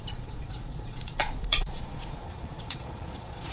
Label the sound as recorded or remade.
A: remade